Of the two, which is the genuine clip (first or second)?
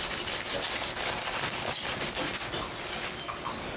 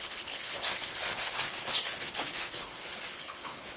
first